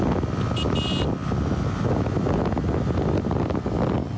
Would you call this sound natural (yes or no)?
yes